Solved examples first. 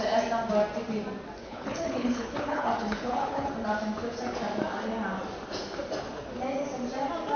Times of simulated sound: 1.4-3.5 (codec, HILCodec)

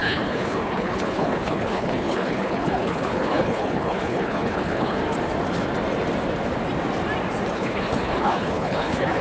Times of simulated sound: 0.0-5.0 (codec, HILCodec); 7.5-9.2

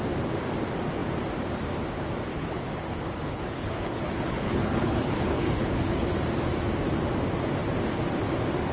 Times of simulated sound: 2.3-6.1 (codec, HILCodec)

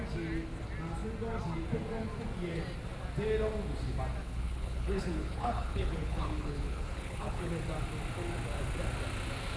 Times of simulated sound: 4.2-7.5 (codec, HILCodec)

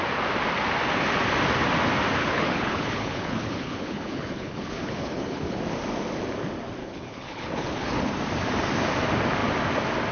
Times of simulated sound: 2.2-5.6 (codec, HILCodec); 6.8-8.1

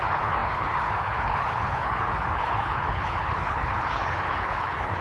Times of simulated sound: 0.0-5.0 (codec, HILCodec)

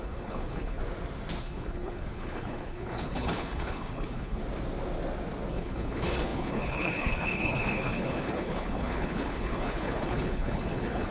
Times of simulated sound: 0.0-0.8 (codec, HILCodec); 1.4-4.4; 5.5-11.1

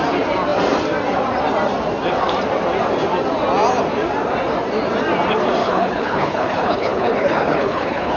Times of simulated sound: 5.6-8.2 (codec, HILCodec)